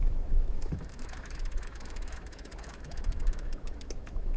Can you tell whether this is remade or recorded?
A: remade